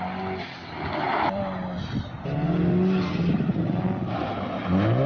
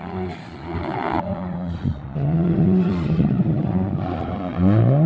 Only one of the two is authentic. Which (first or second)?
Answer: first